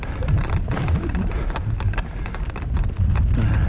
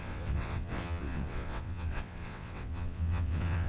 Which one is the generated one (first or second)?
second